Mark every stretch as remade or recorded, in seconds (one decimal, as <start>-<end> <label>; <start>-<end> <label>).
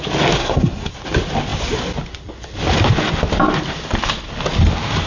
0.0-0.4 recorded; 0.4-0.9 remade; 0.9-5.1 recorded